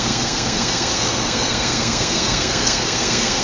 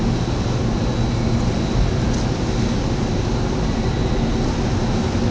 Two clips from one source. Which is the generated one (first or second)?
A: first